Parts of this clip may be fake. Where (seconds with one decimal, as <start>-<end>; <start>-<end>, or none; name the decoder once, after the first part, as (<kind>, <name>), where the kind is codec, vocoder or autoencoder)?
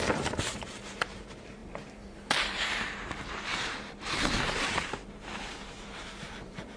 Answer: 0.0-6.8 (vocoder, BigVGAN v2)